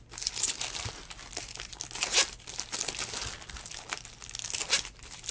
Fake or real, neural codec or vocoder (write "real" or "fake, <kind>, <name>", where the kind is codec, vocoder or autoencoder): real